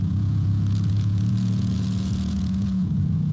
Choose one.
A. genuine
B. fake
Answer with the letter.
B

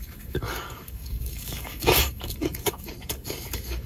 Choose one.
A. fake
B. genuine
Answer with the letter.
A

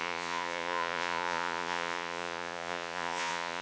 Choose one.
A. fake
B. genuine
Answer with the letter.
A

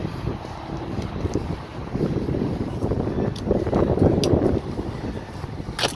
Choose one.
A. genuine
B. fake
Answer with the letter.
A